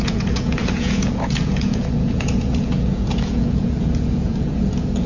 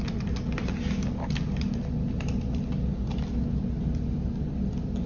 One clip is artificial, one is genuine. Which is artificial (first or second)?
first